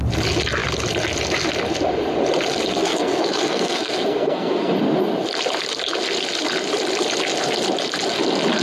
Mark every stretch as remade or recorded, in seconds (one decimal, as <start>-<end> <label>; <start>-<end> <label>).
0.0-2.7 recorded; 2.7-4.7 remade; 4.7-8.6 recorded